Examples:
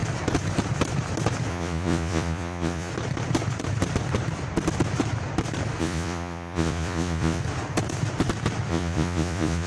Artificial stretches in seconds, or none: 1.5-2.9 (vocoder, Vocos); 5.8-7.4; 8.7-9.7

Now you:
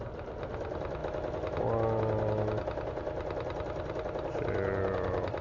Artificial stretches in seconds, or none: 0.0-1.0 (vocoder, BigVGAN v2); 1.6-5.4

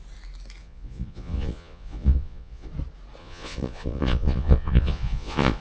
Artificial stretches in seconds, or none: 0.6-2.7 (vocoder, Vocos); 3.2-5.6

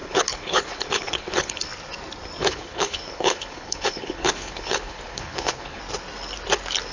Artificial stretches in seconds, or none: 0.0-1.6 (codec, HILCodec); 2.4-5.8

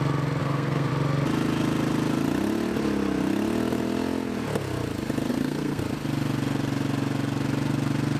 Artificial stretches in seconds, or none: 0.4-0.9 (codec, SNAC); 5.3-5.8

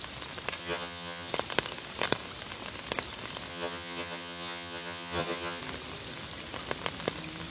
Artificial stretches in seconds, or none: 0.6-1.3 (vocoder, HiFi-GAN); 3.5-5.6

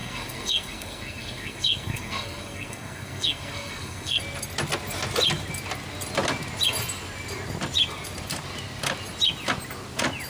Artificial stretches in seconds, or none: 0.0-4.2 (codec, SNAC)

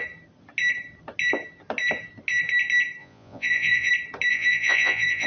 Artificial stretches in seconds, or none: 3.0-3.9 (vocoder, Vocos); 4.3-5.3